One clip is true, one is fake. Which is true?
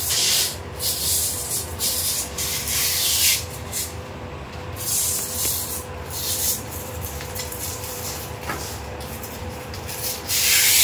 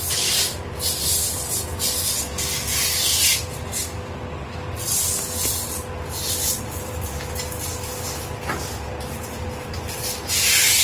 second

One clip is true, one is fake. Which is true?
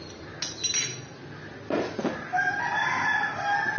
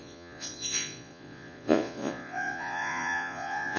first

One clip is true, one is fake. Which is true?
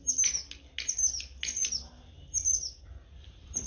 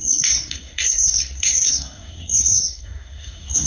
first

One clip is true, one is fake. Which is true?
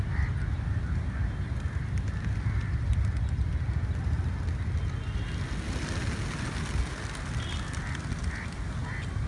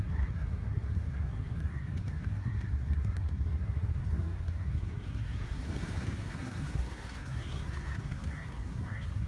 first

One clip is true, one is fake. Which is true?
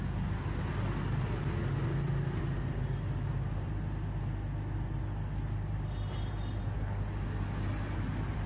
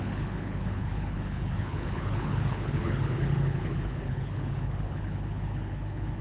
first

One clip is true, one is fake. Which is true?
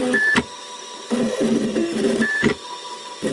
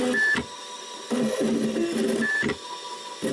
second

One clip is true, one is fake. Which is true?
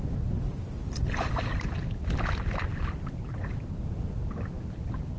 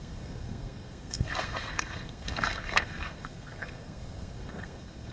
first